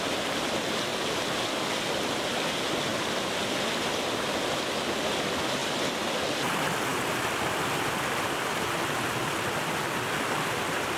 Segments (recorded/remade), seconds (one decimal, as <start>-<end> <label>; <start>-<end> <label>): 0.0-11.0 recorded